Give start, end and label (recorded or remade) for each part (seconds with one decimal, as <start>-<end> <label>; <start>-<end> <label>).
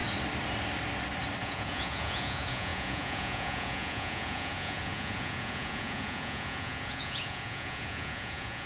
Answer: 0.0-1.4 recorded; 1.4-8.7 remade